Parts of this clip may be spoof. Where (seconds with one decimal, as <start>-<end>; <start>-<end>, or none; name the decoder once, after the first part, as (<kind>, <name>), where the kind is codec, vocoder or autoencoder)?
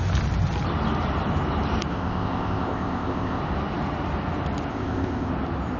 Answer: 1.9-3.4 (codec, ZipCodec); 4.7-5.3